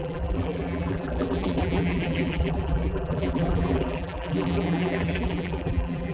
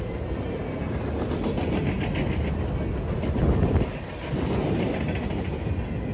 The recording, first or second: second